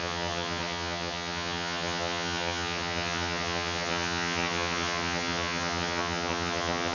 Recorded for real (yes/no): no